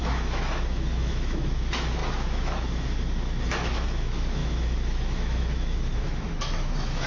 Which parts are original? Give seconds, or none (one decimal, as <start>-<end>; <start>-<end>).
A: none